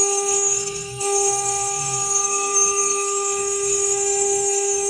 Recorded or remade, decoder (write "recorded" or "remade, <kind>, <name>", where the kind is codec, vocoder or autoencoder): remade, codec, SNAC